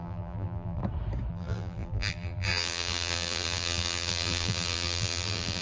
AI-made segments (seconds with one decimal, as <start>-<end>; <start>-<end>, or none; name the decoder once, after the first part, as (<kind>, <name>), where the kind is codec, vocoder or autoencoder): 0.0-0.8 (vocoder, BigVGAN v2); 1.3-5.6